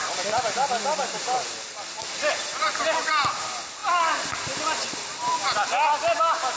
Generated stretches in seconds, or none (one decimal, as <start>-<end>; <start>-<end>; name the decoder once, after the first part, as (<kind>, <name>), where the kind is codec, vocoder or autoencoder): none

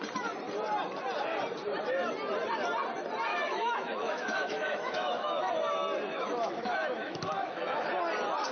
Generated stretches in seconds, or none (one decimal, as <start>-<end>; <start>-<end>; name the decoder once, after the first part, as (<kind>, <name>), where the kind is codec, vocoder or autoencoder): 3.3-5.5 (autoencoder, DAC-VAE); 6.1-7.9

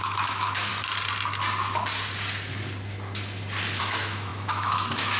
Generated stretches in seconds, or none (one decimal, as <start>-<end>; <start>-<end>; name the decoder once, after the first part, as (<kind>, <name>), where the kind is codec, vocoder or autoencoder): 0.0-0.7 (autoencoder, DAC-VAE); 3.8-5.2